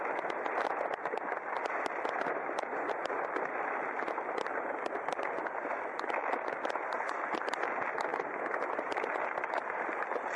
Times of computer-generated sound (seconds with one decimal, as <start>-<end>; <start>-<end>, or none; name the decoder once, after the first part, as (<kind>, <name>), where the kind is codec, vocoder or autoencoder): 8.1-10.4 (vocoder, BigVGAN v2)